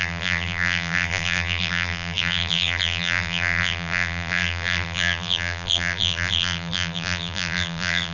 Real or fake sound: fake